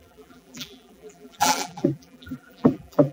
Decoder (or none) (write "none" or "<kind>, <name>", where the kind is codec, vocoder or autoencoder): vocoder, BigVGAN v2